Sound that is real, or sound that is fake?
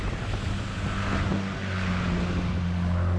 real